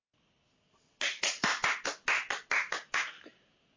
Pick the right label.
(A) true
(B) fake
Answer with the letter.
A